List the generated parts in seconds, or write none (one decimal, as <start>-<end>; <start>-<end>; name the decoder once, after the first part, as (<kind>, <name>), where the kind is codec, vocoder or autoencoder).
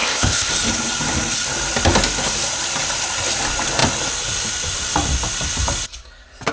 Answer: 0.0-0.5 (codec, ZipCodec)